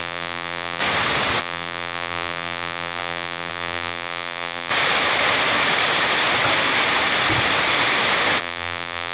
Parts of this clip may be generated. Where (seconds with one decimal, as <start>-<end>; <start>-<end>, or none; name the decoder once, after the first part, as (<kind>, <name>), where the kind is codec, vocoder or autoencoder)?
0.0-0.8 (vocoder, BigVGAN v2); 1.4-4.7; 8.4-9.1